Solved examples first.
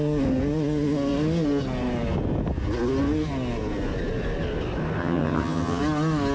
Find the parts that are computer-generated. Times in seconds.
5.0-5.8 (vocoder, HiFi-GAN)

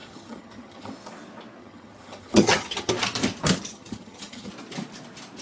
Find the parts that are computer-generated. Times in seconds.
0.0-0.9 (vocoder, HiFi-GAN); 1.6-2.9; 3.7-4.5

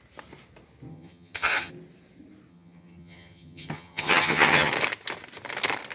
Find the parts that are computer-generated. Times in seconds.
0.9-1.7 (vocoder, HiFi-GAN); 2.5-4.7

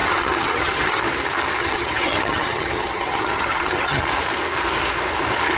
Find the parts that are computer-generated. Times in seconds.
0.0-1.0 (vocoder, HiFi-GAN); 1.6-4.0

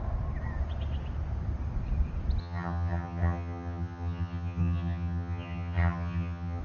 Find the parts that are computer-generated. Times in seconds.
2.4-6.6 (vocoder, HiFi-GAN)

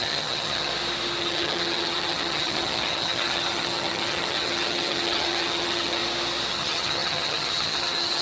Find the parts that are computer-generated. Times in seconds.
0.0-0.7 (vocoder, HiFi-GAN); 1.2-6.0; 6.5-8.2

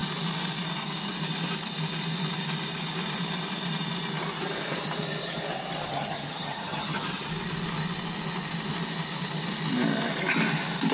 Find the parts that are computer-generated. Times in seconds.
5.9-7.3 (vocoder, HiFi-GAN)